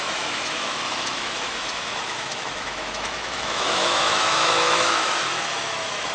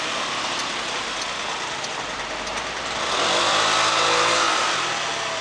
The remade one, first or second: first